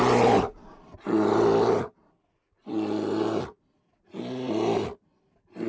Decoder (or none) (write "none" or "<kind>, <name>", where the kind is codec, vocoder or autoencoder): none